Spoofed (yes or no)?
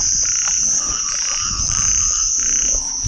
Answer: yes